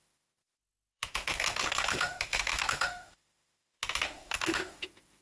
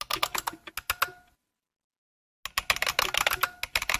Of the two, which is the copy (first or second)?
first